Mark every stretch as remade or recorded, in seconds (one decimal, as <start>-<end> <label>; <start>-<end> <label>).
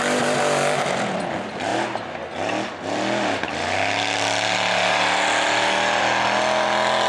0.0-7.1 recorded